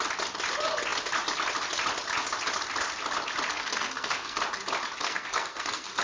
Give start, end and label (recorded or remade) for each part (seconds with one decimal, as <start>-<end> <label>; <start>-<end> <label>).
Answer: 0.0-3.5 recorded; 3.5-4.4 remade; 4.4-5.0 recorded; 5.0-6.0 remade